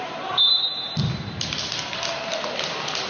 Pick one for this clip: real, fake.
real